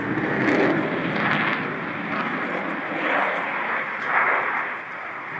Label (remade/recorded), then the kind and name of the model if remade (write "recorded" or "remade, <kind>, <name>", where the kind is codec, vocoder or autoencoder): recorded